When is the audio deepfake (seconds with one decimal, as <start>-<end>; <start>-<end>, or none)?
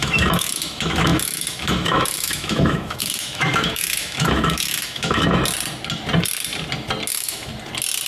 0.0-5.4; 7.1-7.5